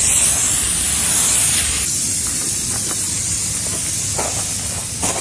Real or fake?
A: real